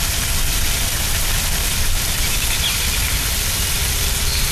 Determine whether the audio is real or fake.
real